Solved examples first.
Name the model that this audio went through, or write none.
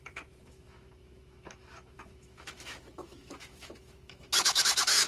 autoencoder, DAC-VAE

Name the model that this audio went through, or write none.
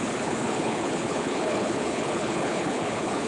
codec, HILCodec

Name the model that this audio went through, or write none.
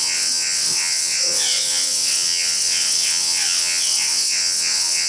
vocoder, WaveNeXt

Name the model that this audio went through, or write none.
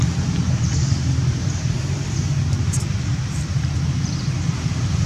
vocoder, BigVGAN v2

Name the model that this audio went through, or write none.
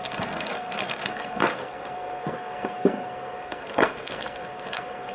codec, SNAC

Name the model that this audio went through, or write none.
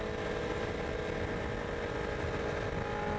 none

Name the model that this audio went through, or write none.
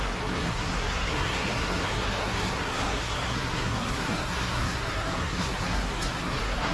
codec, SNAC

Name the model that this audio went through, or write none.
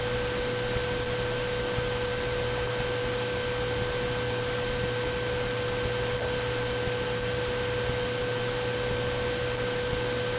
none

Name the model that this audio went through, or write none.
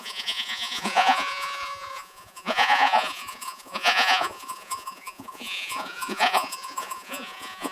vocoder, Vocos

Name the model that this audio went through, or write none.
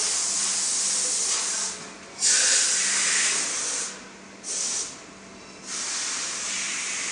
none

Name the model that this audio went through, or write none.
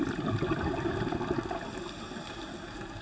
none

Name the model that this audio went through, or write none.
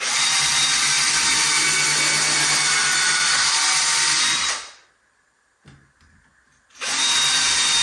none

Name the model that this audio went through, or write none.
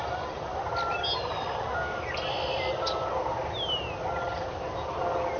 none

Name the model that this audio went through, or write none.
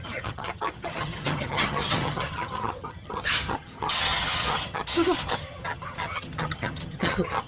vocoder, HiFi-GAN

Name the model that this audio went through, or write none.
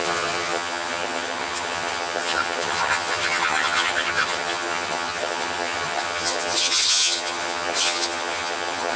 vocoder, HiFi-GAN